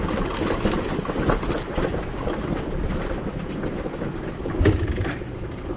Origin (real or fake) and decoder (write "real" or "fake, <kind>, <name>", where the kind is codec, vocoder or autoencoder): real